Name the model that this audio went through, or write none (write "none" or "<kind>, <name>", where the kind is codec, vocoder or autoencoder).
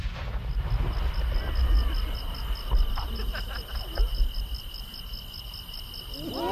none